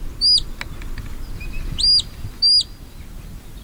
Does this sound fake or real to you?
real